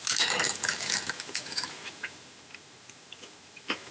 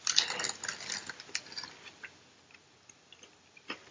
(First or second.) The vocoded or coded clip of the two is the first